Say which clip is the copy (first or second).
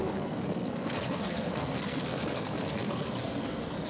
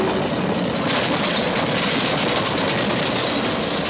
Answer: first